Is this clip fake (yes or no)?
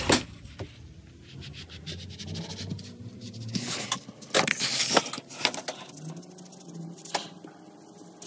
no